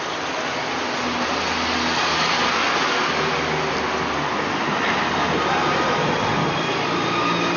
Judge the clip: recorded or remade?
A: recorded